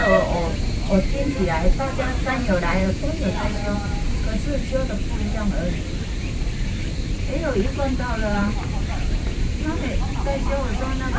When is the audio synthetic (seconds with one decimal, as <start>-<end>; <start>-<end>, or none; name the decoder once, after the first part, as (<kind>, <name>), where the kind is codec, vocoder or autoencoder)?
0.0-4.4 (vocoder, BigVGAN v2); 7.4-10.2